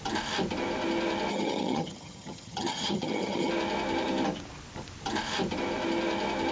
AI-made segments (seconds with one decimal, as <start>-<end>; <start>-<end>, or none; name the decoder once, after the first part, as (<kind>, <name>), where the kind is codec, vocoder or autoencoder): 1.3-3.5 (vocoder, HiFi-GAN)

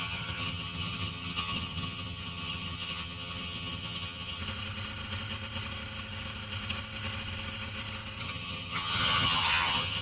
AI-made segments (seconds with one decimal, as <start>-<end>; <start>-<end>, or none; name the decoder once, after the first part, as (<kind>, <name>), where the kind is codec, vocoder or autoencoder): 0.0-4.4 (vocoder, HiFi-GAN); 8.2-10.0

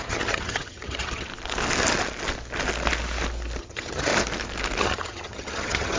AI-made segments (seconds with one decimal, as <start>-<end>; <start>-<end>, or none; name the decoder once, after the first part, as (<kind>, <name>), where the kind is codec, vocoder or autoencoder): 0.0-1.3 (vocoder, HiFi-GAN); 3.6-4.1; 4.8-6.0

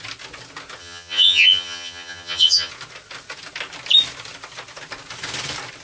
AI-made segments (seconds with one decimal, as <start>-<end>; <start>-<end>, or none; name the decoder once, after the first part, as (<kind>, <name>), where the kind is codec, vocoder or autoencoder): 0.8-2.7 (vocoder, HiFi-GAN)

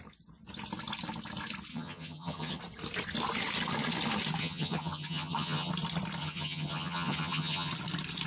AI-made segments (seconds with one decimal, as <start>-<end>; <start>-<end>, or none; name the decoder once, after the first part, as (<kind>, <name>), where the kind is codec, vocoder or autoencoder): 1.7-2.6 (vocoder, HiFi-GAN); 4.4-5.7; 6.2-7.7

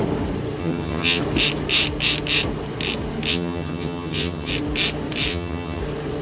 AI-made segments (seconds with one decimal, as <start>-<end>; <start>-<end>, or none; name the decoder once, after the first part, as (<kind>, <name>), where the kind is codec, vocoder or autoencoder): 0.6-1.2 (vocoder, HiFi-GAN); 3.3-4.5; 5.3-5.8